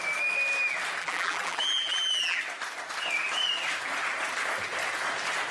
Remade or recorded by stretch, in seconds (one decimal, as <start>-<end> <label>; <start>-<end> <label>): 0.0-1.0 recorded; 1.0-2.4 remade; 2.4-5.5 recorded